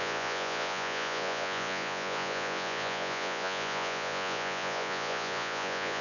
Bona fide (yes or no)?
no